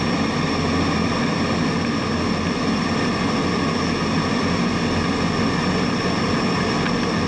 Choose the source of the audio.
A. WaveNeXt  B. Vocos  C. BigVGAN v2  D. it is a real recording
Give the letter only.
D